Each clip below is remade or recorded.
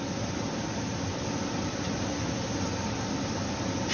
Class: recorded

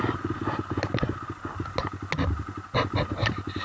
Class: recorded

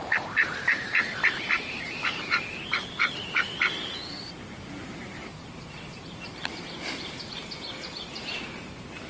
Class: remade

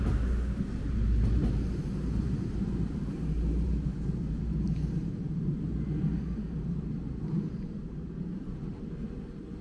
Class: remade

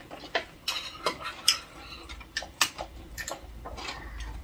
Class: remade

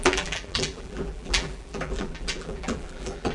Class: remade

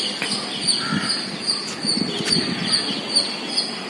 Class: recorded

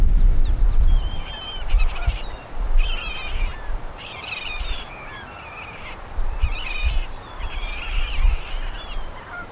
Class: remade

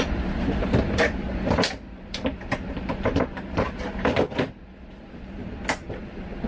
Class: remade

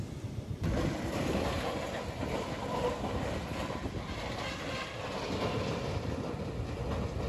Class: recorded